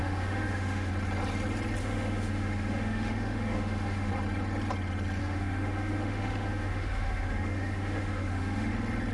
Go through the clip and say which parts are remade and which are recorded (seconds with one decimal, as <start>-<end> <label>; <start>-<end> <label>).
0.0-0.9 remade; 0.9-1.8 recorded; 1.8-4.1 remade; 4.1-5.2 recorded; 5.2-8.7 remade; 8.7-9.1 recorded